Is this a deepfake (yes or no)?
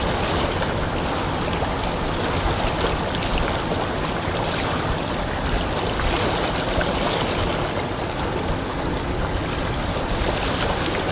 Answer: no